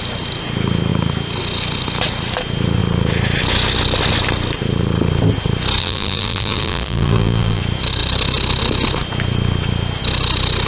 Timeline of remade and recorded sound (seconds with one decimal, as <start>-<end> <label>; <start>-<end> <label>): 0.0-5.8 recorded; 5.8-7.6 remade; 7.6-10.7 recorded